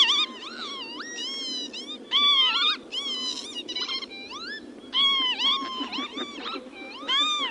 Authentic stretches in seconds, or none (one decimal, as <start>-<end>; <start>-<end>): 0.0-7.5